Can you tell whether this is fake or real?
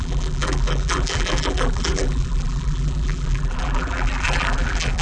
fake